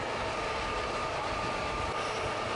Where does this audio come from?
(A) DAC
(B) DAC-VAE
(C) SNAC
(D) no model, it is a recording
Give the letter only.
D